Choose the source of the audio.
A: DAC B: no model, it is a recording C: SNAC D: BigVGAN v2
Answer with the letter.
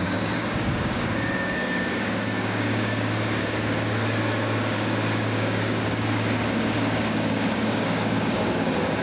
A